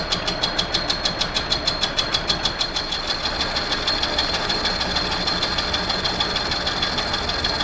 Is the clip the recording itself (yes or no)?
yes